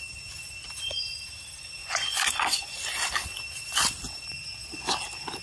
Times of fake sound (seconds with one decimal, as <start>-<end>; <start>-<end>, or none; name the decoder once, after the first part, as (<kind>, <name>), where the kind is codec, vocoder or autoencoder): 1.8-2.7 (vocoder, Vocos)